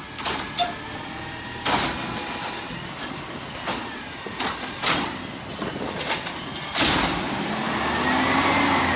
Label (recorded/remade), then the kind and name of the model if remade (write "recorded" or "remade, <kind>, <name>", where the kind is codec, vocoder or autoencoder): recorded